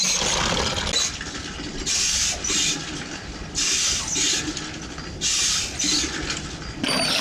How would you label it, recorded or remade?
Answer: recorded